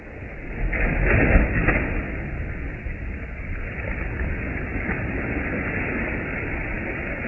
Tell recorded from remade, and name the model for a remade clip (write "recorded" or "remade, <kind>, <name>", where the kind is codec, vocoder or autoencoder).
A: recorded